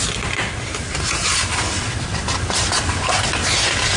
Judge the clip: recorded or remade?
recorded